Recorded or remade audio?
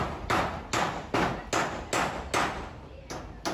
recorded